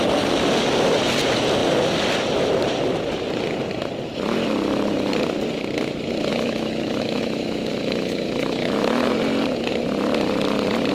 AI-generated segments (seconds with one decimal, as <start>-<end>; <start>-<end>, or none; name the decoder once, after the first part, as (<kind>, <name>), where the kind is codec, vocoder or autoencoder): 6.3-9.1 (autoencoder, DAC-VAE)